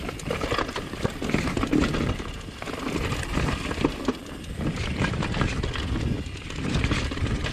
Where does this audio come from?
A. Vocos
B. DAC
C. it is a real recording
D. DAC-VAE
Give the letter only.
C